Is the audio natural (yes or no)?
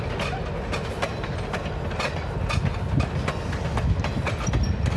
yes